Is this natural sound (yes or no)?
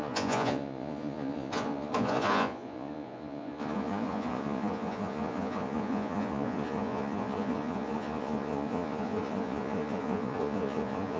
no